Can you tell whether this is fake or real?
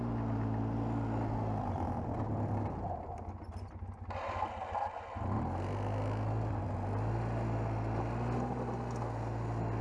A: real